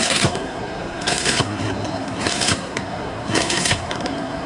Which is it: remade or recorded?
remade